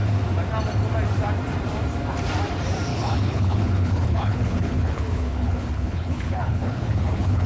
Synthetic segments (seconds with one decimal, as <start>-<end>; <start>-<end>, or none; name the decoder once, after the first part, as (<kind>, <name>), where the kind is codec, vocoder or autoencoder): 2.9-7.5 (codec, HILCodec)